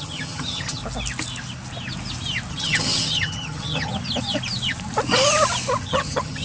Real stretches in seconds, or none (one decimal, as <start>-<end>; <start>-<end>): 0.8-2.5; 3.9-5.8